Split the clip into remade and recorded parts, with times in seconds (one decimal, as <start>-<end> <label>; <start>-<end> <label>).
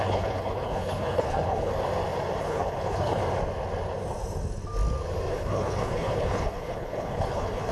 0.0-1.7 remade; 1.7-2.4 recorded; 2.4-3.2 remade; 3.2-5.3 recorded; 5.3-7.7 remade